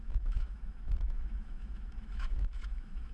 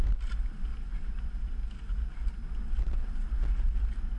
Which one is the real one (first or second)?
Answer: second